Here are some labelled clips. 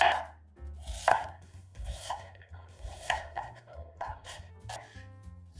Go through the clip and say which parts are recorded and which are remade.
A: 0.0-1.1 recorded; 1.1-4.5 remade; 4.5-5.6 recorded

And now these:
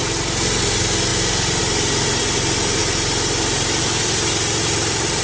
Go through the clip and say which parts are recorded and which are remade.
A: 0.0-5.2 recorded

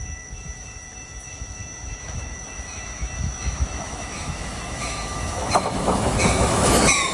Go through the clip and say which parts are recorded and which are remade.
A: 0.0-7.1 remade

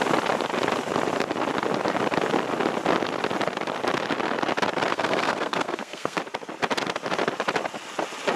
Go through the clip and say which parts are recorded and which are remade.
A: 0.0-4.9 recorded; 4.9-6.2 remade; 6.2-8.4 recorded